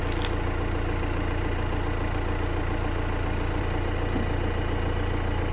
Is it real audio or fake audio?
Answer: real